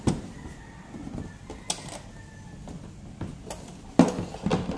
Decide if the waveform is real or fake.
real